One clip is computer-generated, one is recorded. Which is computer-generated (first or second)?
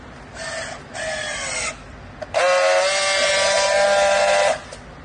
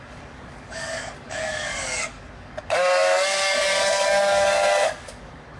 second